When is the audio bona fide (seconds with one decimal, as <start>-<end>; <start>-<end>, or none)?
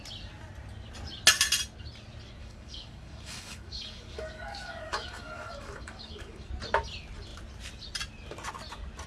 0.0-2.4; 6.5-9.1